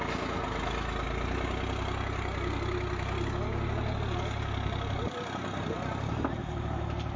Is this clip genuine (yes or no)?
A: yes